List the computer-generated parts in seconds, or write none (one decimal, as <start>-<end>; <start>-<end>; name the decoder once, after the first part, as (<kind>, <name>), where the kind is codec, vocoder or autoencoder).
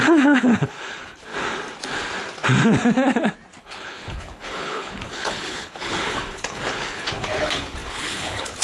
0.0-1.3 (codec, HILCodec); 3.6-8.6